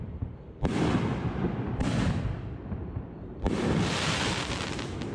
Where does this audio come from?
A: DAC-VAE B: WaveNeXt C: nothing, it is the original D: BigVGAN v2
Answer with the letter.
D